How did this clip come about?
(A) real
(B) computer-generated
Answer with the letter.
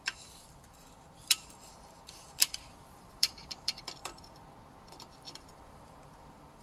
B